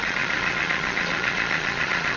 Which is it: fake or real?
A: fake